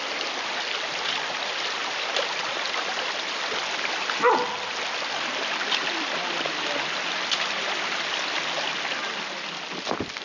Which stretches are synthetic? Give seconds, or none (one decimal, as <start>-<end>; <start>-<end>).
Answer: none